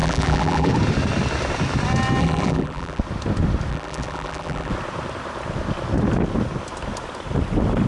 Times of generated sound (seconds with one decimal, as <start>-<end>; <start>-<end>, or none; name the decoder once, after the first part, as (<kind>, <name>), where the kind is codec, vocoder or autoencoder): 0.0-0.7 (vocoder, BigVGAN v2); 2.2-3.0; 3.7-4.7